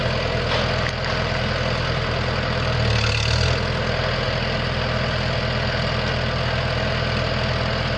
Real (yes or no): yes